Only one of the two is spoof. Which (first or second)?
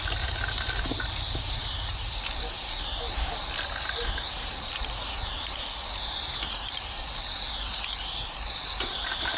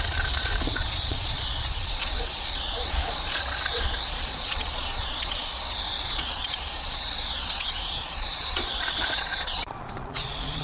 second